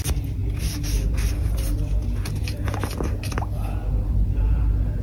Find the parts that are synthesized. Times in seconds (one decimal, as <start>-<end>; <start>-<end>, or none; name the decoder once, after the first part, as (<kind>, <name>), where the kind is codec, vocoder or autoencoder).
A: none